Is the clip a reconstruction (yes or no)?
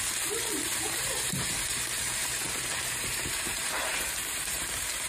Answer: yes